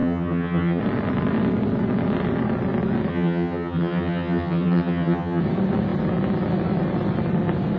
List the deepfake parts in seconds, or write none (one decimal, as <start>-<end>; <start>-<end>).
0.0-0.8; 3.1-5.4